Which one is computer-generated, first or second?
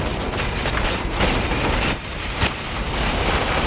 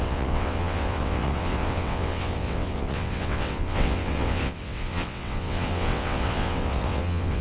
second